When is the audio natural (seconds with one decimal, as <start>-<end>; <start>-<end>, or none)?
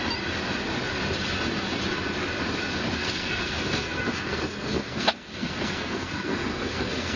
0.0-3.0